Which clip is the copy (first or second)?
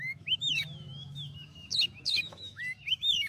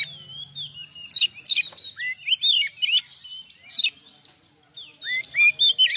first